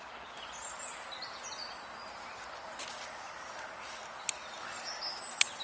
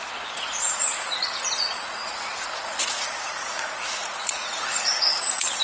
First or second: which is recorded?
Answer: first